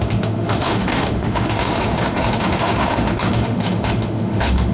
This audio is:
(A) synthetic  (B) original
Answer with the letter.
A